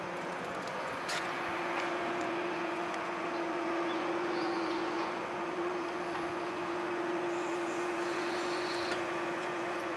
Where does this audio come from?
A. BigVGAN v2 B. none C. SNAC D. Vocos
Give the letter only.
D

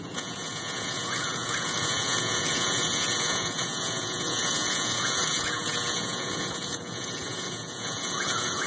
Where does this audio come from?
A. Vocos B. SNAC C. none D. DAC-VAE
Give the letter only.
A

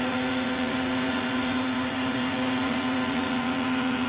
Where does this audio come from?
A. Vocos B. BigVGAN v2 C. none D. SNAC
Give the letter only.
A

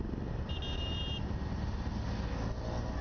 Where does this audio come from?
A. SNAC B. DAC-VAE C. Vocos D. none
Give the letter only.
D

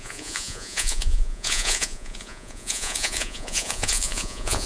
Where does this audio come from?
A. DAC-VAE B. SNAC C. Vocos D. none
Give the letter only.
C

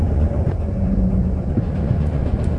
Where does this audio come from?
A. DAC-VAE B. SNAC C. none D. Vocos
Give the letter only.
D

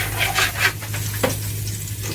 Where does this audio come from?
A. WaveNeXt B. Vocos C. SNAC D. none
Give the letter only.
D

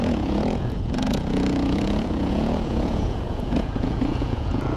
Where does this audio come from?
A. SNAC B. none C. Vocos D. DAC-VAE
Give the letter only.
C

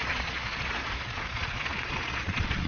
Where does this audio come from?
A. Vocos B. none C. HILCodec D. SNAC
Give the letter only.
A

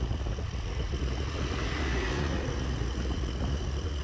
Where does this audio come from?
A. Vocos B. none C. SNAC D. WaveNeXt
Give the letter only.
A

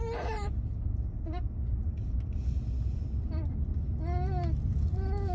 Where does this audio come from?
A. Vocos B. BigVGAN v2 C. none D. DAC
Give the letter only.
C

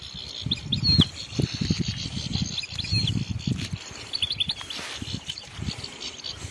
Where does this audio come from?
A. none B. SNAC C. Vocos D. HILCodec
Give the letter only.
A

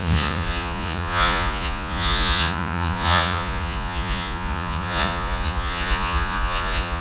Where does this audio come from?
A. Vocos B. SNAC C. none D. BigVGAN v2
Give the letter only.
A